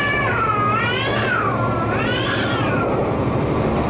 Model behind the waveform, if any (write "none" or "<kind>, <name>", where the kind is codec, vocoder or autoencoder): none